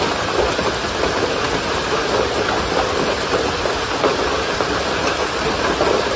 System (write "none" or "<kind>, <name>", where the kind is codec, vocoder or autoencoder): none